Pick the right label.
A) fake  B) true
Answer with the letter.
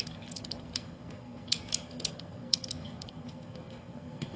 A